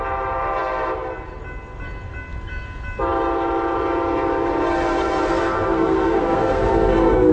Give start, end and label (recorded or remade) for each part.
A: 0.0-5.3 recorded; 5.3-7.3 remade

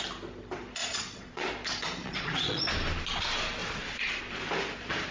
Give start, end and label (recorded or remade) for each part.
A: 0.0-0.8 recorded; 0.8-1.5 remade; 1.5-2.0 recorded; 2.0-2.6 remade; 2.6-3.6 recorded; 3.6-4.2 remade; 4.2-5.1 recorded